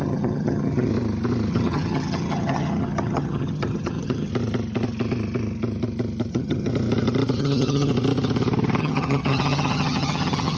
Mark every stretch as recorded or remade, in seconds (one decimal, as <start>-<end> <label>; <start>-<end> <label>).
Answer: 0.0-0.9 remade; 0.9-1.5 recorded; 1.5-4.3 remade; 4.3-6.3 recorded; 6.3-6.7 remade; 6.7-7.4 recorded; 7.4-7.9 remade; 7.9-8.8 recorded; 8.8-10.6 remade